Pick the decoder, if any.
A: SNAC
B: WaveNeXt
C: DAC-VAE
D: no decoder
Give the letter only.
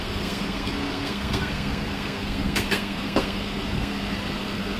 A